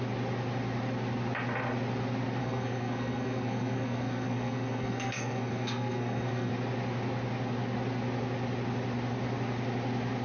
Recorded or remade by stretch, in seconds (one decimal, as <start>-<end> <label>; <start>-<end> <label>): 0.0-2.4 recorded; 2.4-6.5 remade; 6.5-10.2 recorded